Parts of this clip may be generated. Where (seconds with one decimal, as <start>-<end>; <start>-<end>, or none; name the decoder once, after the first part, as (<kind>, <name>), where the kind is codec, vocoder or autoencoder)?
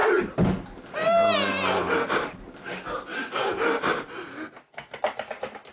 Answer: none